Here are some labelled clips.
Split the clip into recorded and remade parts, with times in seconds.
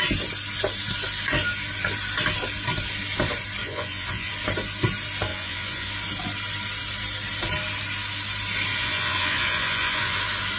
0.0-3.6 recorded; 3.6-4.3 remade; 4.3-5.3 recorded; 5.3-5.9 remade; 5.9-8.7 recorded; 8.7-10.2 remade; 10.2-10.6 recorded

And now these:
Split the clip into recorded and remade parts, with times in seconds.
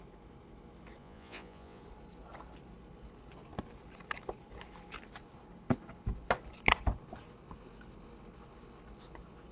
0.0-1.0 recorded; 1.0-1.8 remade; 1.8-9.5 recorded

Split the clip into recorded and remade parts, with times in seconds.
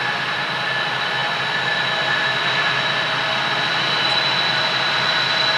0.0-5.6 recorded